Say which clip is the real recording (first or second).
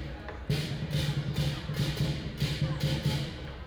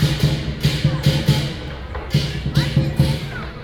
second